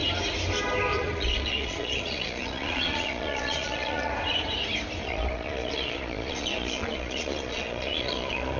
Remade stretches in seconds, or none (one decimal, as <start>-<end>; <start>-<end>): 0.9-4.1; 5.0-8.6